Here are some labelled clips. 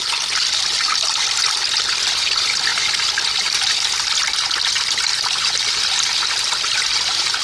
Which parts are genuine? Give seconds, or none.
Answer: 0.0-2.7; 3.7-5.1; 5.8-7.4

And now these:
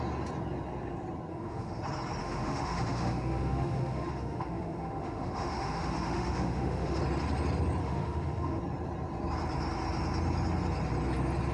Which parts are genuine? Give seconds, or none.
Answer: 0.0-1.3; 1.8-2.2; 7.0-7.8; 8.6-11.5

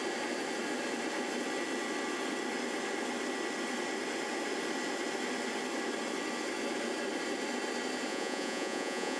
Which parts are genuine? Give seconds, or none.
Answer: 0.0-8.1

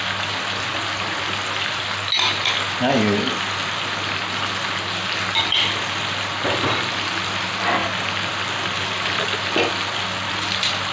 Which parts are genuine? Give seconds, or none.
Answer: 0.0-10.9

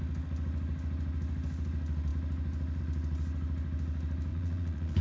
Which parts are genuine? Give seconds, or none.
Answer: 0.0-4.3

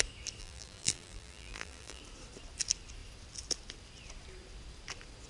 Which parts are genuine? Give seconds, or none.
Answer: 0.0-0.4; 2.0-5.3